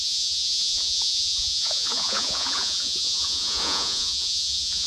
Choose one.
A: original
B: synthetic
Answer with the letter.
B